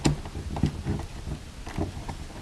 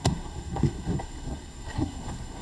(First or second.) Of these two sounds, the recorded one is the first